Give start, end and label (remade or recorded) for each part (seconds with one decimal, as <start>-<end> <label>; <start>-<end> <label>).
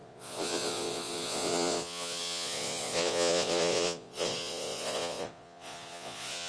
0.0-6.5 remade